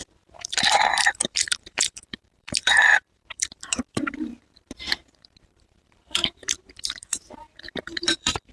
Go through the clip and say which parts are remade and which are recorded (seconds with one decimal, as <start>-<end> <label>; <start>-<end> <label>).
0.0-8.5 remade